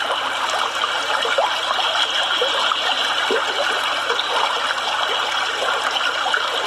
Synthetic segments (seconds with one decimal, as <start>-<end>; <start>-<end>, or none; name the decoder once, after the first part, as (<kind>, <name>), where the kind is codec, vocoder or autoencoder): none